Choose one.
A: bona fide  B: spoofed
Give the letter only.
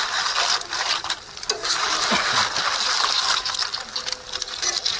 A